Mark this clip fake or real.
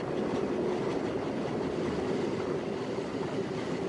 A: fake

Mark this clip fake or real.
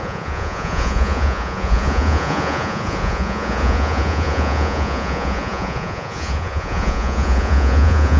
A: fake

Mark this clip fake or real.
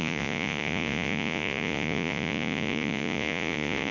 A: fake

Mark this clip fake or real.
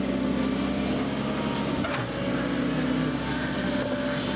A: real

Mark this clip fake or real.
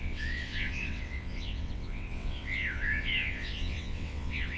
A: fake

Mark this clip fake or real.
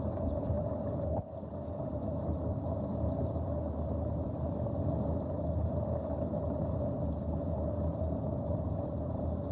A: real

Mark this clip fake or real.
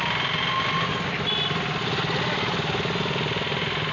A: real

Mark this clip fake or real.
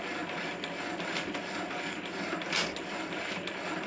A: real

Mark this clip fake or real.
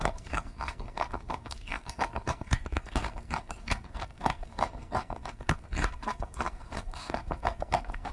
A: fake